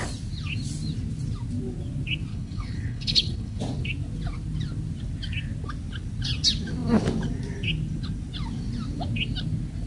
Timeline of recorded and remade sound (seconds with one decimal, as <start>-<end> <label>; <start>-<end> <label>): 0.0-2.3 recorded; 2.3-3.6 remade; 3.6-9.9 recorded